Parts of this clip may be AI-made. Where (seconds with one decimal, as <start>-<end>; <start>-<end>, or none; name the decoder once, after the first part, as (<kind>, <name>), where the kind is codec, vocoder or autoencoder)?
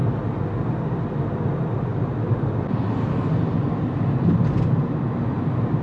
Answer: none